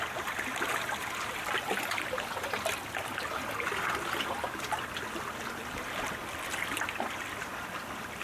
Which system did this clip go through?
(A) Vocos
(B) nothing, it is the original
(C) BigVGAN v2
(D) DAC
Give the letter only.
B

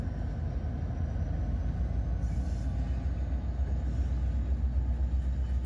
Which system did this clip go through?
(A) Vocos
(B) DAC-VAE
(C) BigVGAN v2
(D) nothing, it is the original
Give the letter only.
D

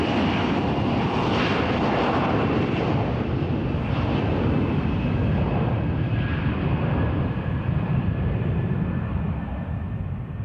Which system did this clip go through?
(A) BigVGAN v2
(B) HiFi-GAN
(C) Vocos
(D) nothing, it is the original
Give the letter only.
D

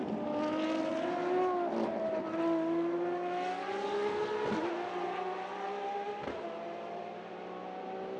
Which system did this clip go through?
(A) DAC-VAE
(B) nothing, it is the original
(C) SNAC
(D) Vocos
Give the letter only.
B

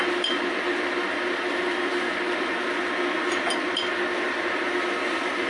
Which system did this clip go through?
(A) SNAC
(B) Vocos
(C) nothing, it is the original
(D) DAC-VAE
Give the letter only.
C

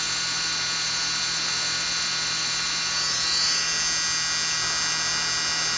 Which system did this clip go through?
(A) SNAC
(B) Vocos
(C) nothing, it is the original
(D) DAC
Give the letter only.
C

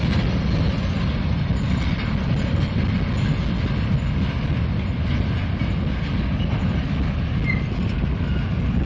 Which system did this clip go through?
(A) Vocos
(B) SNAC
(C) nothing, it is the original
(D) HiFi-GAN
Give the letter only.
C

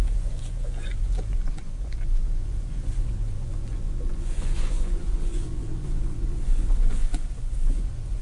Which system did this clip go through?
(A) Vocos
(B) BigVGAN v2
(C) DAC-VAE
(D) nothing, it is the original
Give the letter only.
A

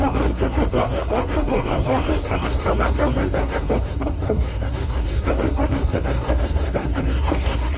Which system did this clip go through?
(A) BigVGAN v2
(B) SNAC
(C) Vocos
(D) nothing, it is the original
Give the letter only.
B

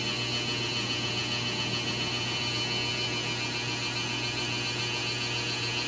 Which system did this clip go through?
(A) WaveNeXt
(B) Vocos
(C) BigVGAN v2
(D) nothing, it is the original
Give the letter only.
D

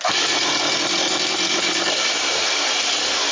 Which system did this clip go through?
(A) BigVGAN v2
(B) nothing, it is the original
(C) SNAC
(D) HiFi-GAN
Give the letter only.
B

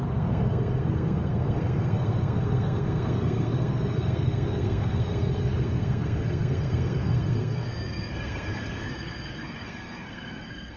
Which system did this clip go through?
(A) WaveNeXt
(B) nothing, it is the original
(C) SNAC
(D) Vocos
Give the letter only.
C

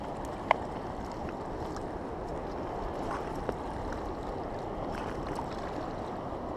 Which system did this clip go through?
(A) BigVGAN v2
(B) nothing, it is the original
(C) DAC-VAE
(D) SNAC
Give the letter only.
B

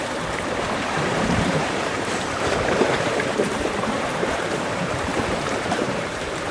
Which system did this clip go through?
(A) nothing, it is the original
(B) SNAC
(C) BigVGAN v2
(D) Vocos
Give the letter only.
C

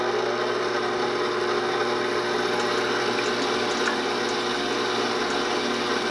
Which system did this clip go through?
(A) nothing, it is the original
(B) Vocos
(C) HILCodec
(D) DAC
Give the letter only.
A